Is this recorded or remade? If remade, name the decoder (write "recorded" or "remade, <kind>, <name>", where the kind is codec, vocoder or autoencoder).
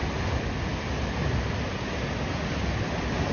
recorded